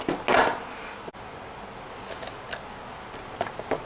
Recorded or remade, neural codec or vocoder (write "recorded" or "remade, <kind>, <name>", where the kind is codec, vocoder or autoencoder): recorded